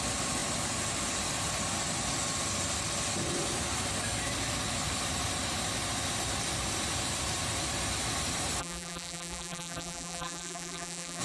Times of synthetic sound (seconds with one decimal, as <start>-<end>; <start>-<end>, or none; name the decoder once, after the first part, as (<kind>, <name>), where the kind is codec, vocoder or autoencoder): 8.6-11.2 (vocoder, BigVGAN v2)